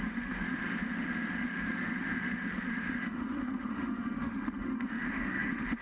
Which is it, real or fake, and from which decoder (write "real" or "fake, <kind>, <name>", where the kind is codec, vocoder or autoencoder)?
fake, autoencoder, DAC-VAE